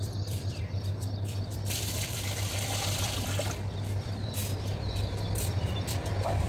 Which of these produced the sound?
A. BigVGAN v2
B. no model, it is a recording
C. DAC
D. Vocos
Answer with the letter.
A